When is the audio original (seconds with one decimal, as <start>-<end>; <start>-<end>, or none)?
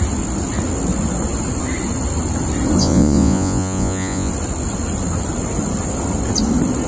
0.0-2.8; 4.3-6.9